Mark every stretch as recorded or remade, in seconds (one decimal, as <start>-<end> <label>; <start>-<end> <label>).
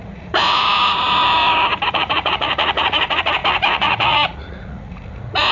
0.0-1.2 remade; 1.2-1.9 recorded; 1.9-5.5 remade